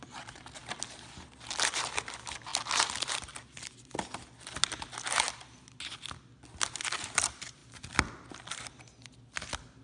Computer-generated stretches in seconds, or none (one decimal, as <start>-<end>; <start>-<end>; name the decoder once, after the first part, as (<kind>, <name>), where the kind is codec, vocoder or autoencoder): none